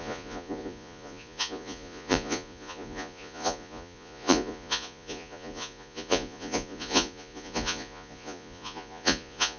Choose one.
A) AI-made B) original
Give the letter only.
A